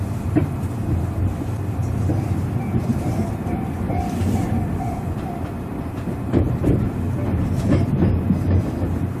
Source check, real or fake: fake